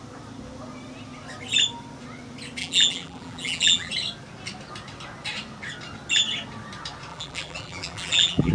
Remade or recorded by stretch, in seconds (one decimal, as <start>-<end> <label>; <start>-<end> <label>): 0.0-2.6 recorded; 2.6-3.9 remade; 3.9-7.1 recorded; 7.1-8.5 remade